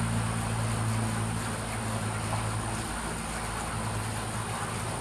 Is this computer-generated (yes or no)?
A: no